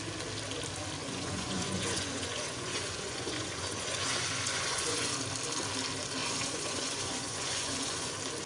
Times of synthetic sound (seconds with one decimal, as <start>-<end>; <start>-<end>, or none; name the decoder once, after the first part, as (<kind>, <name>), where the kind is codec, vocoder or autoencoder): 1.0-5.1 (vocoder, Vocos); 6.2-8.1